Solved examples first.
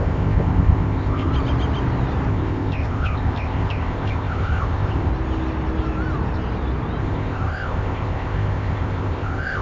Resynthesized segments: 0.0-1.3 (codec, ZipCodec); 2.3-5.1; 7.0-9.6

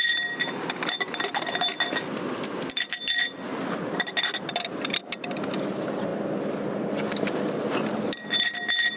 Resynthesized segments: none

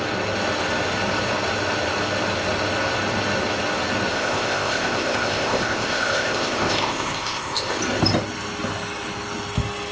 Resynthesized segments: 4.1-7.8 (codec, ZipCodec)

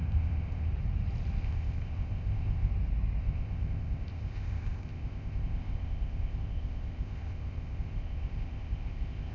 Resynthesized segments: 0.0-0.7 (codec, ZipCodec); 1.4-2.7; 3.2-9.3